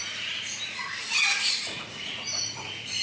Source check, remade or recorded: remade